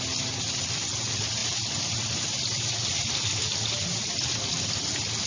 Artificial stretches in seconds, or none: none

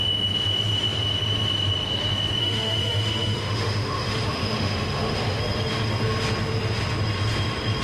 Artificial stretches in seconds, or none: 2.4-5.4 (autoencoder, DAC-VAE)

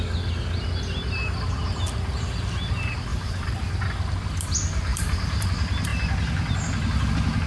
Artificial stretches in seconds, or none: 3.1-3.7 (vocoder, BigVGAN v2); 4.9-5.5

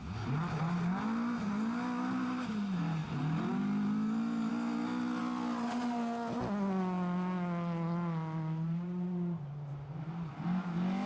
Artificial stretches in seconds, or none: none

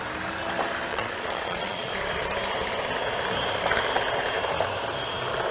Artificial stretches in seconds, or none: 0.9-1.9 (vocoder, Vocos)

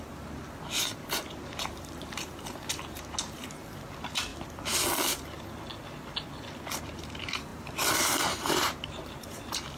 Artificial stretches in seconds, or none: 0.0-4.3 (vocoder, BigVGAN v2); 6.8-9.8

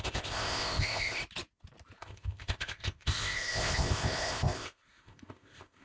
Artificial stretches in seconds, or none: 0.0-1.2 (codec, ZipCodec); 2.0-5.8

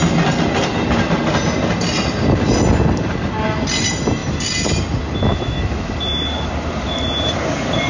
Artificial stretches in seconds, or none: 5.3-5.9 (autoencoder, DAC-VAE)